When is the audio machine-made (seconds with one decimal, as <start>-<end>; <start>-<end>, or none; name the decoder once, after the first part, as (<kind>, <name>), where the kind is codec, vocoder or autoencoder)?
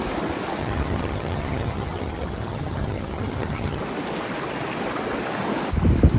0.6-3.8 (vocoder, HiFi-GAN)